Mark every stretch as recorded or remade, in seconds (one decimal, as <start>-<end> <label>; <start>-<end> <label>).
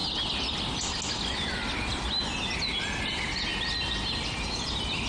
0.0-3.0 recorded; 3.0-3.5 remade; 3.5-4.5 recorded; 4.5-5.1 remade